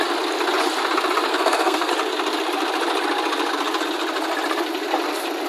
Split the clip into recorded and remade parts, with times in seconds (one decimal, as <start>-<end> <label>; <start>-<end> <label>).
0.0-1.3 recorded; 1.3-1.9 remade; 1.9-5.5 recorded